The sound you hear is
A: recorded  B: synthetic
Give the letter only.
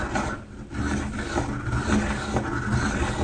A